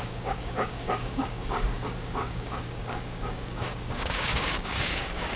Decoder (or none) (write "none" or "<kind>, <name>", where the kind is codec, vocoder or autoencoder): codec, DAC